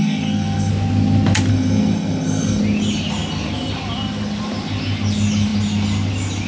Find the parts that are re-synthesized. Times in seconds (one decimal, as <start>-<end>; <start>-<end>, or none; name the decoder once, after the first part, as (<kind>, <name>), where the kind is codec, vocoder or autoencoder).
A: 0.0-0.7 (codec, SNAC); 1.5-2.6